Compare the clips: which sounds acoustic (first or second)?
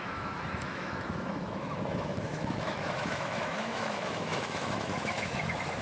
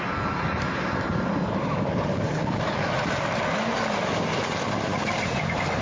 second